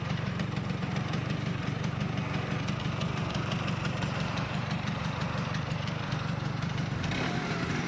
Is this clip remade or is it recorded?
remade